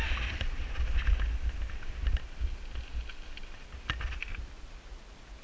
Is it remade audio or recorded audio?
recorded